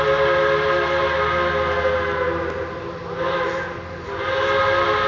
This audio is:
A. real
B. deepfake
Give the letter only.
A